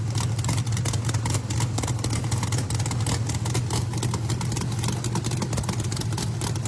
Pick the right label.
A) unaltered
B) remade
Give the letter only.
A